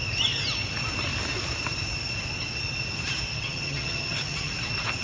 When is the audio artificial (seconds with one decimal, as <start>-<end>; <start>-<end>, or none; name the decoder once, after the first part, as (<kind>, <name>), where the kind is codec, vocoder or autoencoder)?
3.3-4.5 (vocoder, HiFi-GAN)